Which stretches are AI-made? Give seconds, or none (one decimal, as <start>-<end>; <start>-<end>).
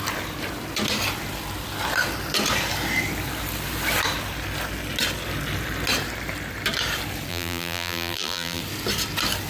7.3-8.6